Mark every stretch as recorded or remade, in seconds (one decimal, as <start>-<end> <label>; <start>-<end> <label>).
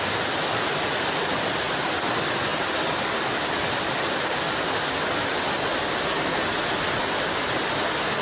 0.0-8.2 recorded